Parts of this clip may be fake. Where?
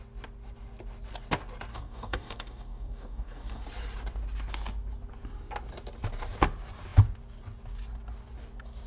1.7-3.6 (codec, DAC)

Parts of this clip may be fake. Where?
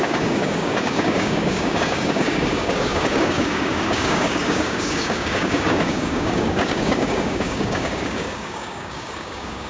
0.0-9.7 (codec, DAC)